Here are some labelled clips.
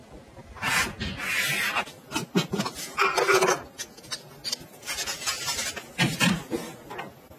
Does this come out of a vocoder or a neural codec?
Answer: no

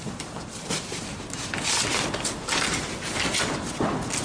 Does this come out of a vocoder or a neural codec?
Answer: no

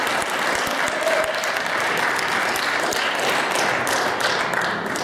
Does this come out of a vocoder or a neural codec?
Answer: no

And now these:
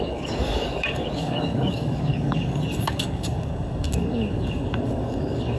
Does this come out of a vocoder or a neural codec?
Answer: yes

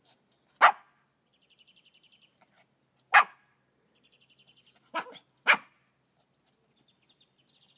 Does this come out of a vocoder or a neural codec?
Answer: no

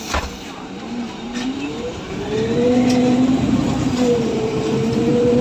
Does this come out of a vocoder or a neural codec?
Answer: yes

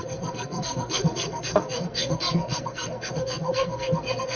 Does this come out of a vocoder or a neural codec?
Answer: yes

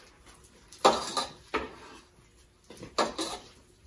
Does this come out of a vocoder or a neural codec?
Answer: no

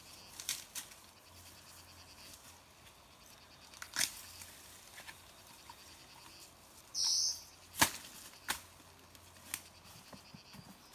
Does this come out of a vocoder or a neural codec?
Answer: no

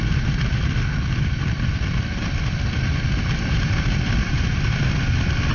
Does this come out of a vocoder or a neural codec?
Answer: no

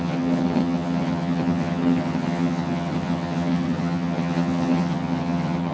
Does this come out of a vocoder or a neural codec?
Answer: yes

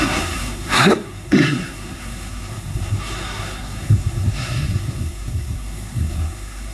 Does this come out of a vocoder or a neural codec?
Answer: yes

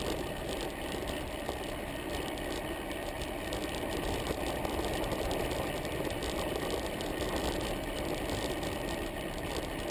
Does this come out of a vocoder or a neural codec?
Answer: no